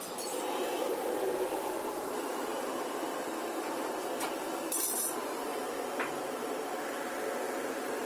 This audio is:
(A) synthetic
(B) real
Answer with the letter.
A